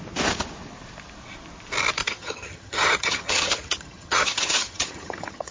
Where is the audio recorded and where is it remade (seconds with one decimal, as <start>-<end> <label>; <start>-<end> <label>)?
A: 0.0-2.0 recorded; 2.0-5.5 remade